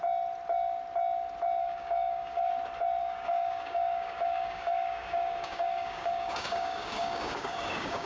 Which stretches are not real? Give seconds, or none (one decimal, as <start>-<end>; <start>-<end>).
1.6-2.5; 3.0-8.1